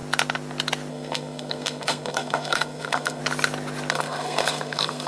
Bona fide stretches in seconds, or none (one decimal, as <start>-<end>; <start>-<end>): 0.0-0.9; 3.2-3.9